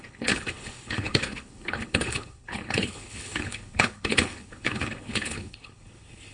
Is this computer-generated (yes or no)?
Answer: yes